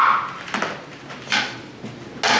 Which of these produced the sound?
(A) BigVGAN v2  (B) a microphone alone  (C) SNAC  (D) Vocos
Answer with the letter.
B